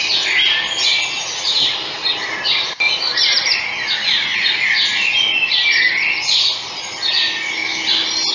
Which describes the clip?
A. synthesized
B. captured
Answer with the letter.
B